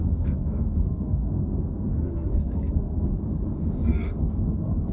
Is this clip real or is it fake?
fake